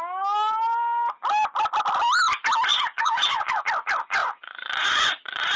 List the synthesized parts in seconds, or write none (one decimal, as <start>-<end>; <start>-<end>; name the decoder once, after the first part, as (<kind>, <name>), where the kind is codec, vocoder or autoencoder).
2.7-3.6 (vocoder, Vocos); 4.2-5.6